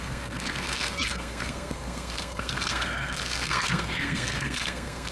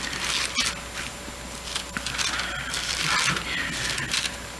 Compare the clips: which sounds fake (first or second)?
first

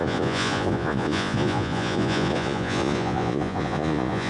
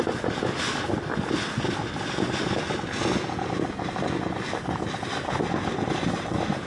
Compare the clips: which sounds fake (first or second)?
first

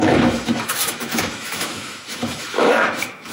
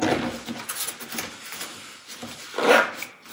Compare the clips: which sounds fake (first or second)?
first